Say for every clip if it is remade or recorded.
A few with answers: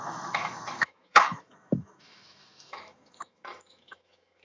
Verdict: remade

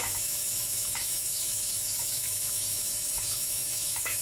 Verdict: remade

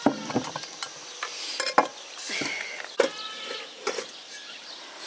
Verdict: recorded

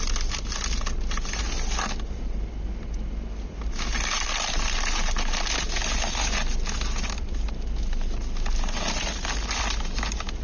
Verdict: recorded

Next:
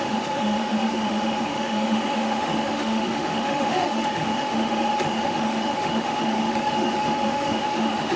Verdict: remade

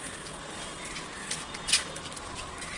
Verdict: recorded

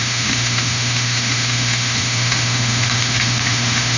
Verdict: remade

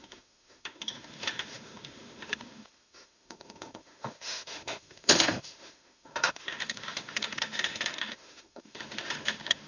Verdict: remade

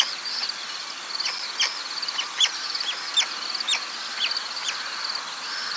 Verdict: recorded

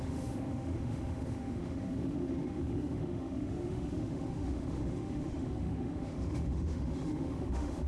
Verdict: remade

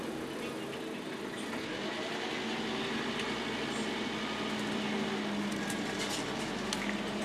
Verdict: recorded